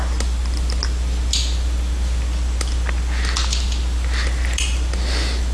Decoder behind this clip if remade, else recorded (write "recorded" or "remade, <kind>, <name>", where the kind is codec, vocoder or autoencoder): recorded